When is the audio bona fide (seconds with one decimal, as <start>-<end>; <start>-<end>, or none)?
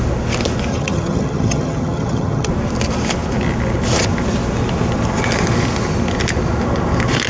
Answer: 0.0-0.7; 2.5-7.3